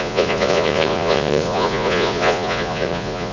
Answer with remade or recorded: remade